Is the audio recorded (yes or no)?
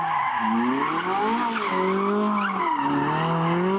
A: yes